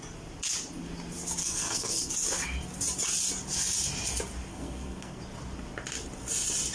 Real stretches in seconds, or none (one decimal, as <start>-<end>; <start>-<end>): 0.0-1.4; 2.1-4.5; 5.2-6.7